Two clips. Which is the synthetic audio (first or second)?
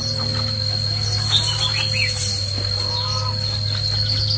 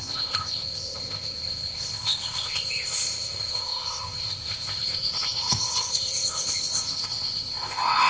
second